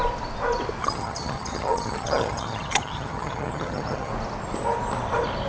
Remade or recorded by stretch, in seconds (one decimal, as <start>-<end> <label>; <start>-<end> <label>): 0.0-0.8 recorded; 0.8-4.1 remade; 4.1-5.5 recorded